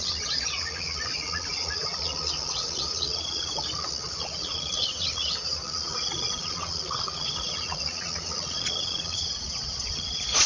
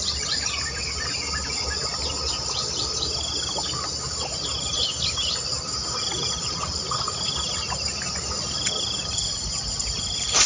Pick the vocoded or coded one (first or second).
first